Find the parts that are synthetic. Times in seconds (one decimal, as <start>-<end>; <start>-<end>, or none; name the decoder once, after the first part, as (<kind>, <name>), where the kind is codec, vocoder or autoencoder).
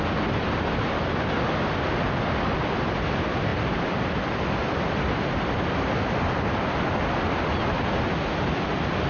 none